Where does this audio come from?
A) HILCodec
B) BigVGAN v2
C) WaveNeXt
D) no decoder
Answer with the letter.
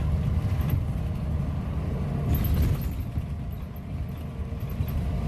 D